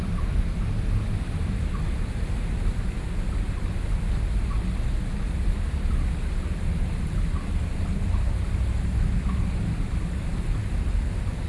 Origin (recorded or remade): recorded